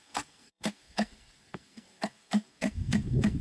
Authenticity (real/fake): fake